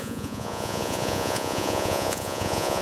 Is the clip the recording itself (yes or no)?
no